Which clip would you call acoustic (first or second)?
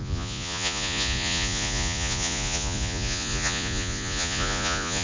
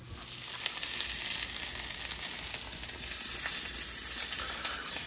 second